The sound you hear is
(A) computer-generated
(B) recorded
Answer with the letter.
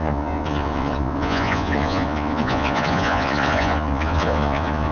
A